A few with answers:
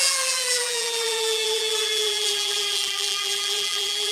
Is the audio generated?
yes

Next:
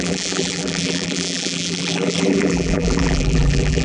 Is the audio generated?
yes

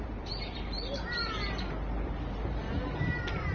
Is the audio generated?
yes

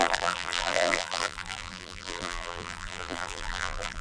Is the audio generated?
yes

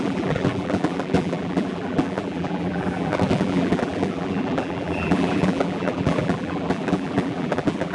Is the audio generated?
yes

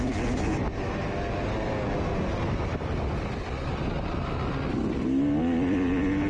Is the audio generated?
no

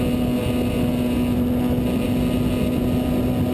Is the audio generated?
no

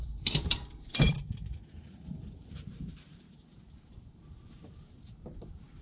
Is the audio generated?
yes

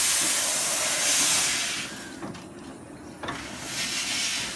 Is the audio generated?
no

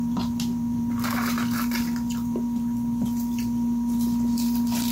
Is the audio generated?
yes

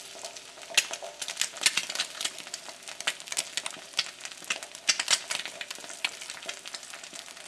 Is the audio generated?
no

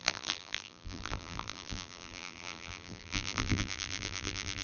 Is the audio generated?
yes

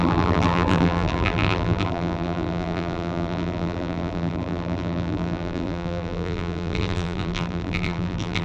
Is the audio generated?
yes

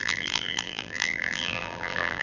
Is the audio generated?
yes